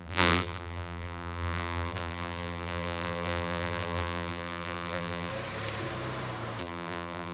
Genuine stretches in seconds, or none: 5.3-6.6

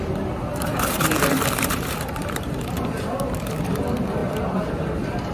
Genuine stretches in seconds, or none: 0.0-0.5; 3.7-5.3

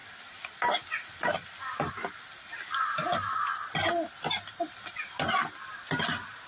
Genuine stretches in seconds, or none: 5.0-6.5

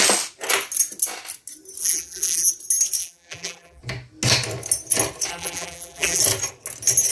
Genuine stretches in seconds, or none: 0.0-1.8; 2.5-3.0; 3.8-5.3; 6.2-7.1

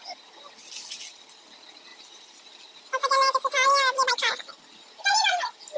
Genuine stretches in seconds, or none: 0.0-1.9; 4.6-5.8